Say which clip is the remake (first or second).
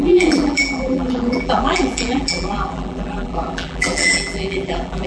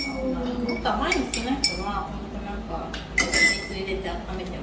first